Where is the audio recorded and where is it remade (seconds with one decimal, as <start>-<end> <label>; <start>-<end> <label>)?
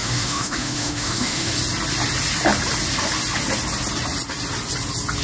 0.0-1.5 remade; 1.5-5.2 recorded